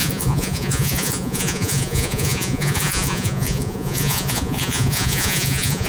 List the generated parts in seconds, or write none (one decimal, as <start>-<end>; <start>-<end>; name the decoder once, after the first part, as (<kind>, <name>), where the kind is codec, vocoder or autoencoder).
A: 0.0-5.9 (vocoder, Vocos)